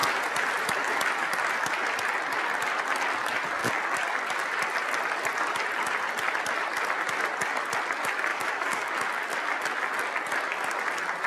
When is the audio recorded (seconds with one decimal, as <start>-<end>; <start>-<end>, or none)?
0.0-8.3; 8.9-11.3